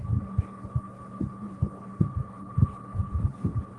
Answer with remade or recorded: remade